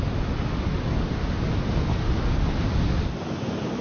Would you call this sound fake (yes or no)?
no